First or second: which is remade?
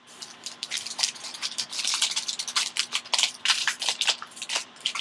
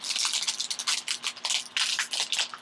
first